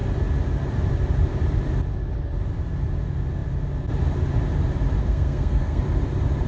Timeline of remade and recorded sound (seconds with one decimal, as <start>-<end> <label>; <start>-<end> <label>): 0.0-5.0 recorded; 5.0-5.8 remade; 5.8-6.5 recorded